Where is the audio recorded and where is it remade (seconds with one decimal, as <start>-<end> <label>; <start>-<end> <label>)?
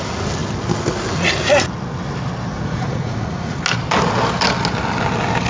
0.0-2.5 recorded; 2.5-3.6 remade; 3.6-5.5 recorded